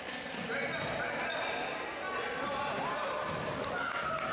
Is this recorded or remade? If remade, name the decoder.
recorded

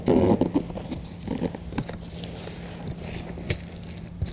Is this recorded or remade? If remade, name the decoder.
recorded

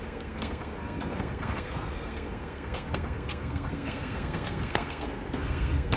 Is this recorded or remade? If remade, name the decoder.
remade, codec, SNAC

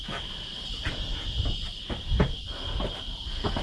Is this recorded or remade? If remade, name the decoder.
recorded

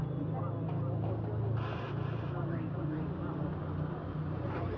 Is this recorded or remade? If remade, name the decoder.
recorded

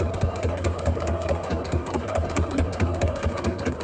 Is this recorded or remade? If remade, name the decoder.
remade, codec, SNAC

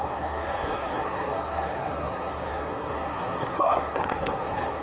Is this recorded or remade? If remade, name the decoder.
remade, codec, SNAC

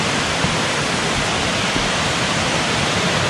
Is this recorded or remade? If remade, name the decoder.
recorded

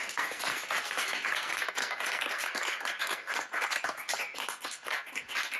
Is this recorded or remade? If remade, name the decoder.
remade, codec, SNAC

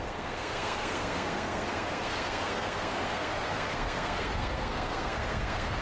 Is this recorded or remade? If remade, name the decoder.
remade, codec, SNAC